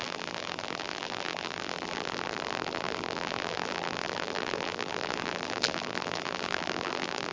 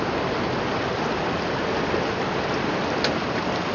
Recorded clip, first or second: second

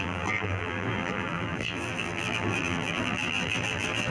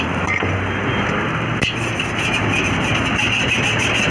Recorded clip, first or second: second